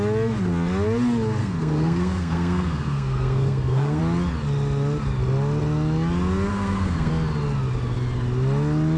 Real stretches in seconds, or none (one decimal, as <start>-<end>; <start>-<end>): 0.0-1.4; 4.0-6.5; 7.1-9.0